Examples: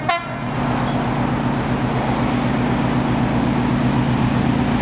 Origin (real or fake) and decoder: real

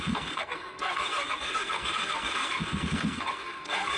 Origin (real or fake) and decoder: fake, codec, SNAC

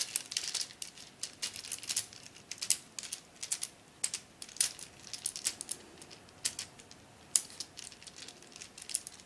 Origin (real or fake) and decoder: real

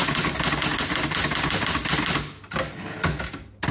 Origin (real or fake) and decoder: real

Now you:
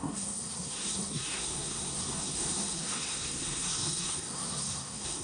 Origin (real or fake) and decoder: fake, codec, SNAC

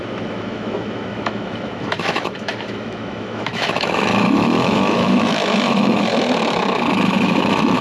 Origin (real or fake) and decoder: fake, autoencoder, DAC-VAE